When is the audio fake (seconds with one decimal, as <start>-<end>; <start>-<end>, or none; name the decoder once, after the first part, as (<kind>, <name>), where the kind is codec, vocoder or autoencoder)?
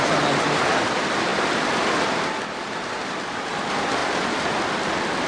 1.3-3.4 (vocoder, BigVGAN v2)